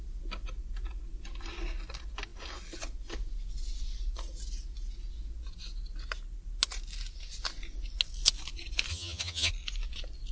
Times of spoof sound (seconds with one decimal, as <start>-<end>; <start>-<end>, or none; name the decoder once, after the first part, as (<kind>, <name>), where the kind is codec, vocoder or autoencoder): 8.9-9.5 (vocoder, HiFi-GAN)